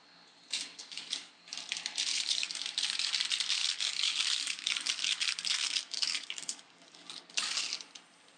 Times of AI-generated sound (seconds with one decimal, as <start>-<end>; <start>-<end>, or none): 0.8-1.3; 2.1-3.1; 3.6-7.4